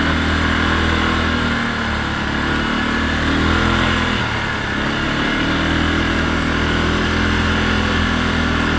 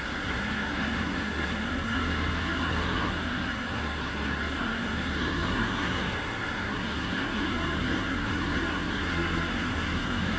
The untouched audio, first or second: first